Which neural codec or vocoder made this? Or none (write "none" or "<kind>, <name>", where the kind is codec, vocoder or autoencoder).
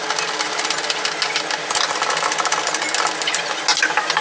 none